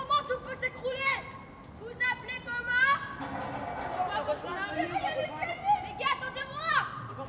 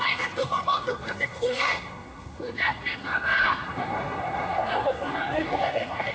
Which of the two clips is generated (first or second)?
second